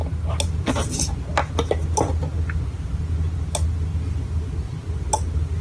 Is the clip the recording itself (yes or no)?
yes